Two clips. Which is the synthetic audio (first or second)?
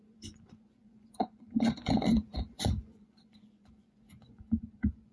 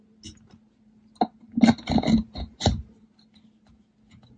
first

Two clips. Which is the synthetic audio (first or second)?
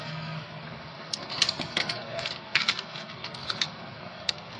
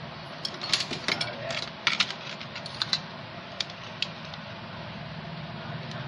first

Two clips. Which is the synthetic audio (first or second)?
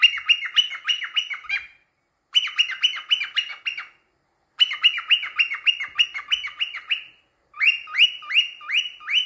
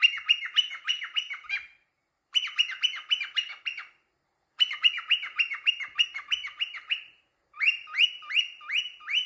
second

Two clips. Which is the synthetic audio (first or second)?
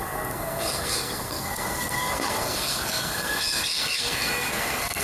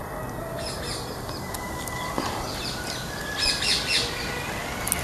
first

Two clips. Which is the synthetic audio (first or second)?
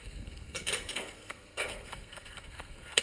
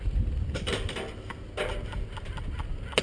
first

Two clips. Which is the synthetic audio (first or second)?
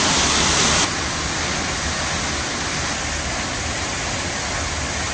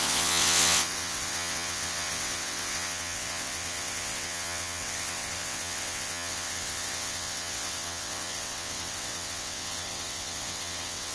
second